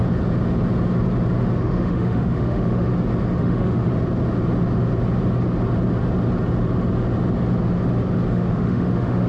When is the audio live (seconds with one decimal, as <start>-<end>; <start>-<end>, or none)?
0.0-1.6; 2.9-3.4; 3.9-8.3